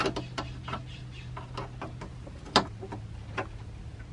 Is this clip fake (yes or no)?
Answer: no